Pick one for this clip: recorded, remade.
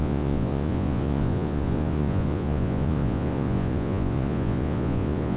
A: remade